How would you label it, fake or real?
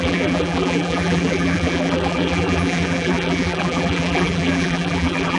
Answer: fake